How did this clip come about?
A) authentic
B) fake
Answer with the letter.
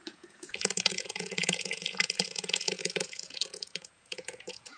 B